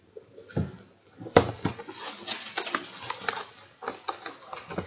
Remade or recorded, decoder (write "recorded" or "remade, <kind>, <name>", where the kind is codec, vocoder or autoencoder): recorded